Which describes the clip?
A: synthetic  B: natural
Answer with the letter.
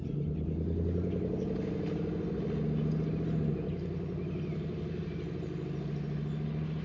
B